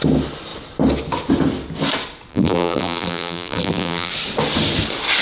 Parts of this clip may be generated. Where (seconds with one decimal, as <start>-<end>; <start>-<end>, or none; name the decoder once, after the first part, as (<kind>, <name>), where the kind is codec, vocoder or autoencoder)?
2.3-4.1 (vocoder, BigVGAN v2)

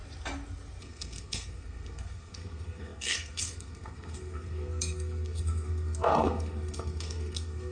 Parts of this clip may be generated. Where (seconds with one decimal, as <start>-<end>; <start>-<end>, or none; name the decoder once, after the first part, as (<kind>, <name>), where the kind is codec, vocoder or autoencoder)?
0.8-7.7 (codec, SNAC)

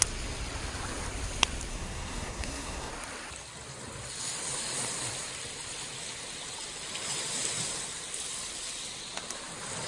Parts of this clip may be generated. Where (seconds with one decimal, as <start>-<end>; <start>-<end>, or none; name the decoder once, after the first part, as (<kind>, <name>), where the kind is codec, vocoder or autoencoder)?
1.7-2.9 (codec, SNAC)

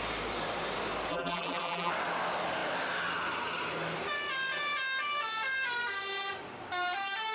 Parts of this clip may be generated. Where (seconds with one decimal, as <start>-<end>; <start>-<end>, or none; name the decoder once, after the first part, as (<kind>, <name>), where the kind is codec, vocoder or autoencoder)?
1.1-1.9 (vocoder, BigVGAN v2)